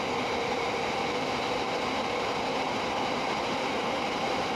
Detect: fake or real real